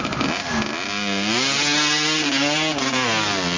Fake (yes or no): no